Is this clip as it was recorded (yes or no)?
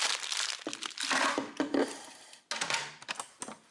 yes